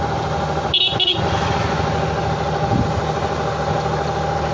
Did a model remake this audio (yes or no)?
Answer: no